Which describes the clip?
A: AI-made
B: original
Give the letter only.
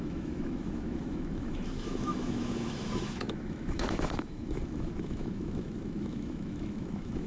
A